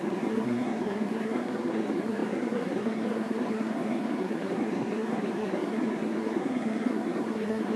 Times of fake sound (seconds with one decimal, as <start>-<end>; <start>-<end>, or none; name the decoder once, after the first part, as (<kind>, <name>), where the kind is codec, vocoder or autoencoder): 0.0-7.8 (codec, SNAC)